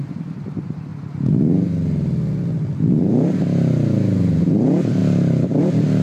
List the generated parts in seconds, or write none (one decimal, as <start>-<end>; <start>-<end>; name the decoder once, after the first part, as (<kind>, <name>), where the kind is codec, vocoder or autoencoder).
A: 0.0-0.9 (vocoder, BigVGAN v2); 2.8-6.0